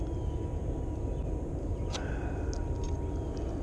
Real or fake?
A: real